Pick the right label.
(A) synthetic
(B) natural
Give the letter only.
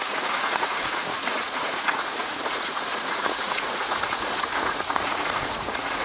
A